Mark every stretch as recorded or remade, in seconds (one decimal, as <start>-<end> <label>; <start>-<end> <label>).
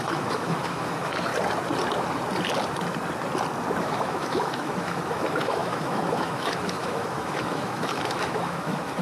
0.0-1.3 remade; 1.3-3.8 recorded; 3.8-9.0 remade